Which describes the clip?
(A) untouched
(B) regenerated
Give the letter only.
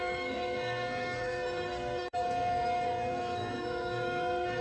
B